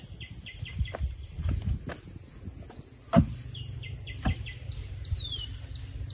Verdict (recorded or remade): recorded